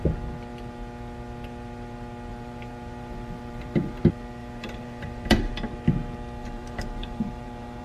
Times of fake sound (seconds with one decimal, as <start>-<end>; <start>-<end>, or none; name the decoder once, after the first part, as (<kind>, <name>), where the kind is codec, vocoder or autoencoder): 2.3-4.0 (vocoder, BigVGAN v2); 4.4-5.5; 6.4-7.8